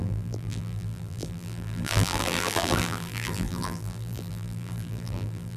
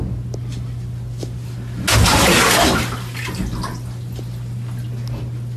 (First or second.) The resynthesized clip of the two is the first